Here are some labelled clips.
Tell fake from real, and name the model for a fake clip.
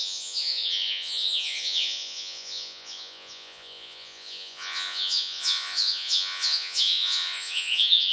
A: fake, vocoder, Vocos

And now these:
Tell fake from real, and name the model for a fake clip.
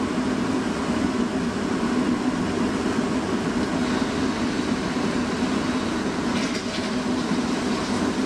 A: real